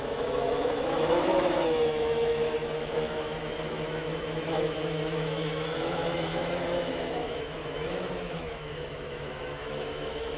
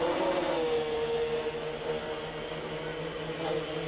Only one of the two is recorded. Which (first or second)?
second